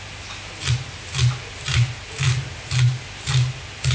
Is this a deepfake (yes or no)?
no